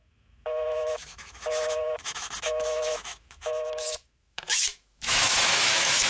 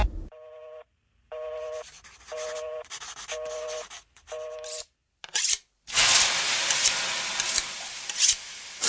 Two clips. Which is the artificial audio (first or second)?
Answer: first